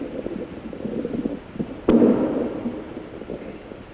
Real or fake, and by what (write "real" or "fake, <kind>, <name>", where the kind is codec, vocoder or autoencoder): real